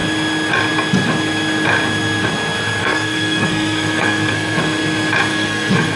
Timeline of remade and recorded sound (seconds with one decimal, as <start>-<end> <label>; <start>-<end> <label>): 0.0-2.8 recorded; 2.8-4.6 remade; 4.6-5.3 recorded; 5.3-6.0 remade